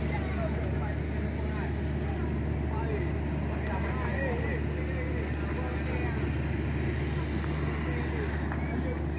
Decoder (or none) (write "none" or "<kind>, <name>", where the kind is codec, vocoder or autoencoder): none